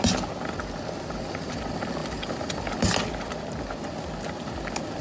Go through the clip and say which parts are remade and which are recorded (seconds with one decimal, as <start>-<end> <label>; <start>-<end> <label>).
0.0-5.0 recorded